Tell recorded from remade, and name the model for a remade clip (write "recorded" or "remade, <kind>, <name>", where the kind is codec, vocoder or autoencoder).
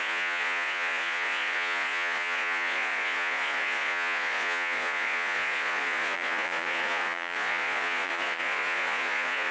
remade, vocoder, Vocos